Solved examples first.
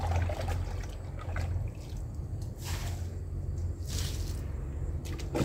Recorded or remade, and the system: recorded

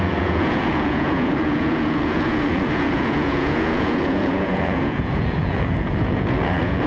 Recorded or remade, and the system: remade, vocoder, Vocos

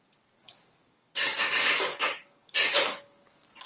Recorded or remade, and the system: remade, codec, DAC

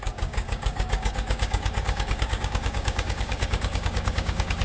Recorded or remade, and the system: remade, codec, DAC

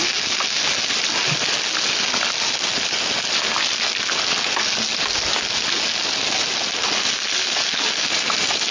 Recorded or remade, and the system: recorded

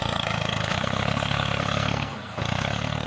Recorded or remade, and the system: remade, codec, SNAC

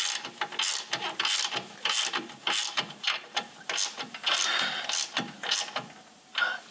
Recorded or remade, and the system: recorded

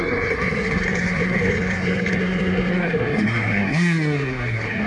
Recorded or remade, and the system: remade, codec, SNAC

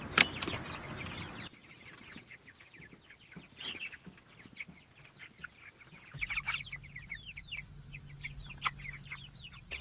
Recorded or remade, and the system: recorded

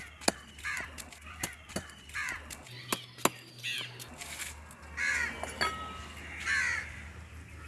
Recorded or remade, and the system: recorded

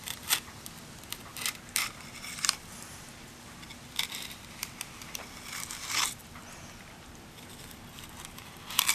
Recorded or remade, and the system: remade, vocoder, BigVGAN v2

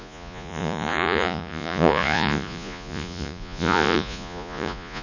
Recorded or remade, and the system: remade, vocoder, Vocos